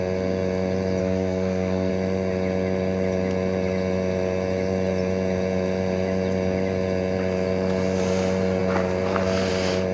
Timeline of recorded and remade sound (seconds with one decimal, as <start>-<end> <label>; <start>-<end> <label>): 0.0-1.0 recorded; 1.0-1.9 remade; 1.9-9.9 recorded